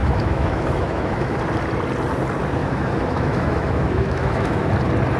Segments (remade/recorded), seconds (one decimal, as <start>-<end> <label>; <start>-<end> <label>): 0.0-1.4 remade; 1.4-2.6 recorded; 2.6-4.7 remade; 4.7-5.2 recorded